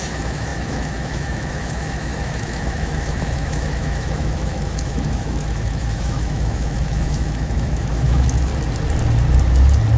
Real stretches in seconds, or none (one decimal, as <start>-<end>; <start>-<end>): 8.5-10.0